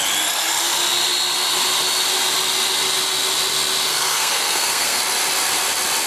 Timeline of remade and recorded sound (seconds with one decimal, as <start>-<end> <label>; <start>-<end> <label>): 0.0-3.9 recorded; 3.9-5.0 remade; 5.0-6.1 recorded